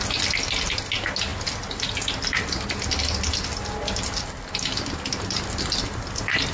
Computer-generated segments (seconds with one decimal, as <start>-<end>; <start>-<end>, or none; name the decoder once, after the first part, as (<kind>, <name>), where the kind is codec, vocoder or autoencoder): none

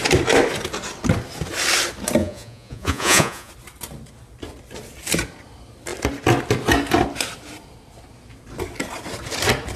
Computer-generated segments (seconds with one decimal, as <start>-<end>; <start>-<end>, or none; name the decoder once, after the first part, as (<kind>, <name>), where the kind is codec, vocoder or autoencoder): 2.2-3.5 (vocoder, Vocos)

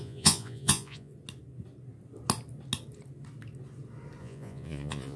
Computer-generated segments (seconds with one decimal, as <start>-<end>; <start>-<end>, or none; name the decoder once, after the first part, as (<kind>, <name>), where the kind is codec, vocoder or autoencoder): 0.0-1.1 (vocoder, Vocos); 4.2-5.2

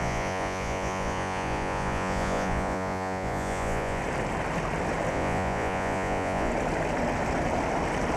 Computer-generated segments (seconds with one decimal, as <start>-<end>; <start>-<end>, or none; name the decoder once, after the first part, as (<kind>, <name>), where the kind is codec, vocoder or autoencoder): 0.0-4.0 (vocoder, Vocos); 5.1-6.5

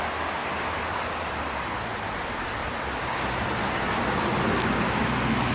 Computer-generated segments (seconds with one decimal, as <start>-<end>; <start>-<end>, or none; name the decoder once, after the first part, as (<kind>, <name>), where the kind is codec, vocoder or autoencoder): none

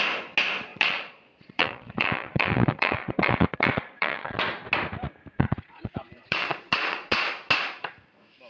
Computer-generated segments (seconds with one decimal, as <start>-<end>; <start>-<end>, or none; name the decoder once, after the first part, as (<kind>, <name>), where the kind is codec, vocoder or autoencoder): 0.7-4.4 (vocoder, Vocos); 5.3-7.3

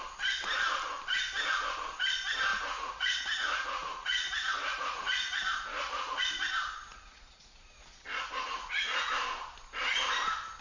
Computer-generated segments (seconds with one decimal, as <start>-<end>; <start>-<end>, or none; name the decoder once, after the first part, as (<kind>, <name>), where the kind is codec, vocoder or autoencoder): 2.5-6.2 (vocoder, Vocos); 6.9-9.1